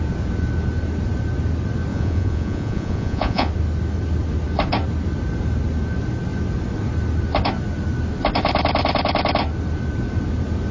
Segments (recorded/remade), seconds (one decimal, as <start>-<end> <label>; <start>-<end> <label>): 0.0-1.9 recorded; 1.9-3.5 remade; 3.5-10.7 recorded

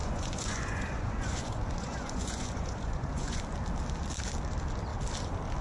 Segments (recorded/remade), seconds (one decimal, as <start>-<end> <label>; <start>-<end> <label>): 0.0-3.4 remade; 3.4-5.6 recorded

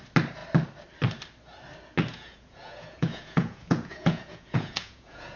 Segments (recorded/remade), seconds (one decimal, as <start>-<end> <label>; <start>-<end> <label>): 0.0-2.1 recorded; 2.1-5.4 remade

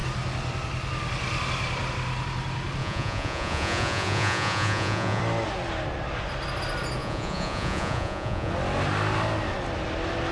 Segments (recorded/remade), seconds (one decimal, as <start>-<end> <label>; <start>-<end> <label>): 0.0-2.8 recorded; 2.8-5.2 remade; 5.2-7.0 recorded; 7.0-8.5 remade; 8.5-10.3 recorded

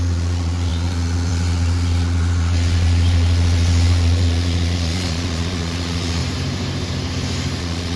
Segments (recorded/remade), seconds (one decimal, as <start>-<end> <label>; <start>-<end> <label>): 0.0-6.2 remade; 6.2-7.6 recorded; 7.6-8.0 remade

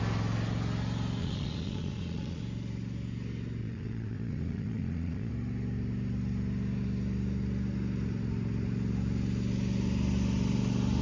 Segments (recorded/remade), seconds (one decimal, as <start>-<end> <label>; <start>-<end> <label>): 0.0-1.2 recorded; 1.2-2.4 remade; 2.4-3.6 recorded; 3.6-5.3 remade; 5.3-11.0 recorded

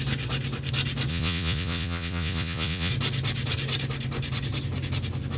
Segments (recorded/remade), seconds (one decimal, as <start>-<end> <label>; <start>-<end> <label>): 0.0-1.1 recorded; 1.1-2.9 remade; 2.9-5.4 recorded